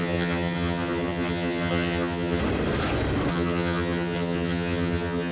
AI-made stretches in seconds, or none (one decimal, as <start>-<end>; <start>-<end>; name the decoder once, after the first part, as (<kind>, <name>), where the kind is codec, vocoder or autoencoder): 0.0-2.4 (vocoder, HiFi-GAN); 3.3-5.3